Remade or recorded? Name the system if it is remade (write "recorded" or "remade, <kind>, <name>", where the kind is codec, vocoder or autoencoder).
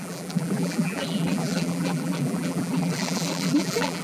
remade, vocoder, BigVGAN v2